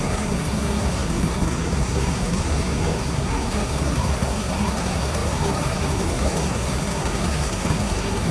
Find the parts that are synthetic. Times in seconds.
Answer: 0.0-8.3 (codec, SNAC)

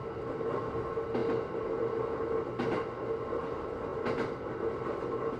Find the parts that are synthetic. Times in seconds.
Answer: none

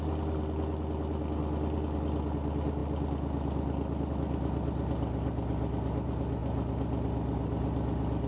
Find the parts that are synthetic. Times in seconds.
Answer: none

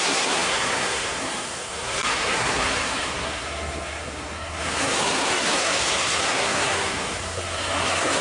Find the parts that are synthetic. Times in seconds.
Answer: 0.0-8.2 (codec, SNAC)

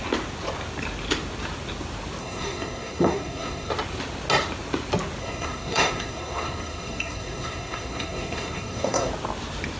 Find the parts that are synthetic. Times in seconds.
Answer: 2.2-3.7 (codec, SNAC); 5.2-9.1

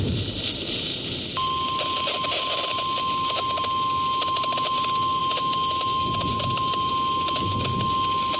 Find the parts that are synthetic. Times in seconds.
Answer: none